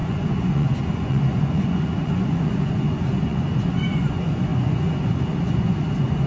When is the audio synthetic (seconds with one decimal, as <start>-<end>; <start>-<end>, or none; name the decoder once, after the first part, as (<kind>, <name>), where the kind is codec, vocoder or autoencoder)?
0.0-6.3 (vocoder, Vocos)